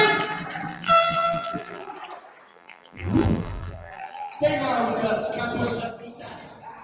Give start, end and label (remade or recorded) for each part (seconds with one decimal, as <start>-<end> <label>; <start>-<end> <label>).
0.0-0.7 recorded; 0.7-1.9 remade; 1.9-2.5 recorded; 2.5-4.3 remade; 4.3-6.8 recorded